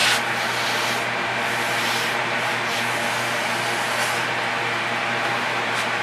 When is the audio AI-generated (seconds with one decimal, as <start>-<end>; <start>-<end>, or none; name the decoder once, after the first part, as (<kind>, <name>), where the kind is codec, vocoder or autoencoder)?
1.5-2.5 (vocoder, BigVGAN v2); 5.3-6.0